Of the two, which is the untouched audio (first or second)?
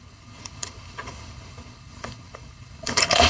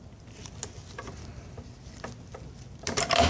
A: second